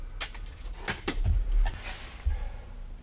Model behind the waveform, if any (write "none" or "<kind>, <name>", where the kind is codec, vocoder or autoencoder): none